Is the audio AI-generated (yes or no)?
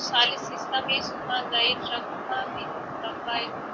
no